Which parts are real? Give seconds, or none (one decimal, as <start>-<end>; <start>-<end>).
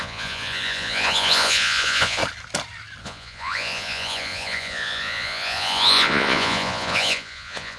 2.2-3.0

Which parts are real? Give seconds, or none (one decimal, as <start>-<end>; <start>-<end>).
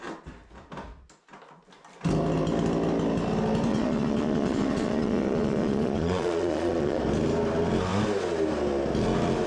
0.0-3.7; 7.0-9.5